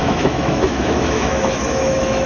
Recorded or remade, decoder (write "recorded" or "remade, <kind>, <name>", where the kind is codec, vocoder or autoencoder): remade, autoencoder, DAC-VAE